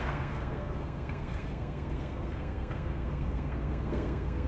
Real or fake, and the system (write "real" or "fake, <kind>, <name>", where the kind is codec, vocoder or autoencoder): fake, codec, SNAC